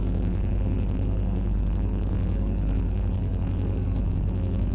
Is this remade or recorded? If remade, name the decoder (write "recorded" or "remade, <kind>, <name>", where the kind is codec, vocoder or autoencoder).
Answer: remade, codec, SNAC